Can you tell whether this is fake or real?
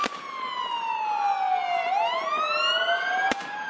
real